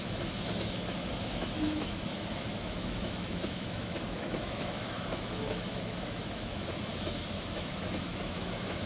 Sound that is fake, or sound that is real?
fake